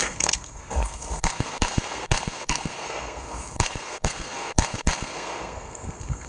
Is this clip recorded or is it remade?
remade